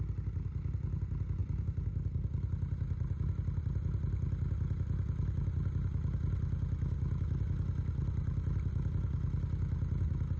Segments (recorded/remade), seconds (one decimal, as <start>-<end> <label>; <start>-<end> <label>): 0.0-10.4 recorded